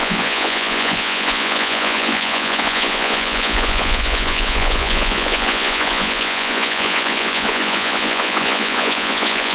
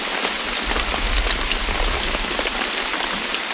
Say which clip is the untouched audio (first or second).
second